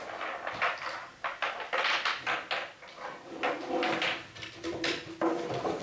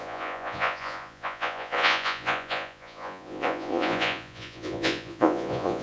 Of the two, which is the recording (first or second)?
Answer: first